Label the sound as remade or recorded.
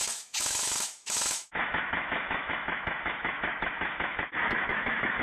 remade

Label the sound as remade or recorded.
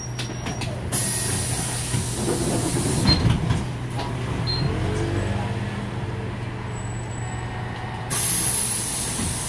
recorded